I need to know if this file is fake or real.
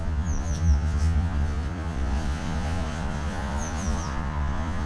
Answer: fake